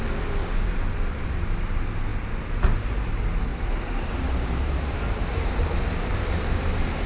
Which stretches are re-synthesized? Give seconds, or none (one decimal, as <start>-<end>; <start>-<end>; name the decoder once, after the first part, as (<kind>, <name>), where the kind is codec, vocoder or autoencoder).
0.4-1.5 (vocoder, BigVGAN v2); 3.5-7.1